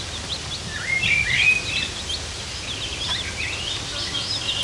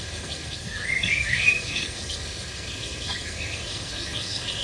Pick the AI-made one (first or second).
second